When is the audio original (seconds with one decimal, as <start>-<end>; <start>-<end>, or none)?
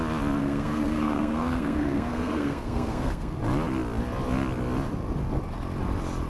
0.0-0.4; 3.4-6.3